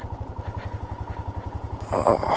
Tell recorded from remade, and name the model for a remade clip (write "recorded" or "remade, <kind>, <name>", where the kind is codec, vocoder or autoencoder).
recorded